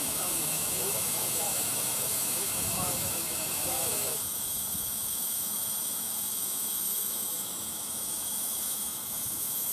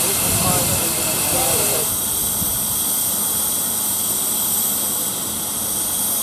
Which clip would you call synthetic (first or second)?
first